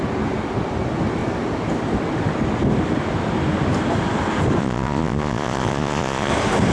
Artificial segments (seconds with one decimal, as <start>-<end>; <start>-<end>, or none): 4.6-6.3